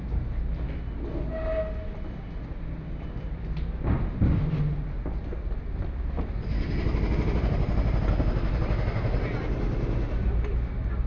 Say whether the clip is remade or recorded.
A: recorded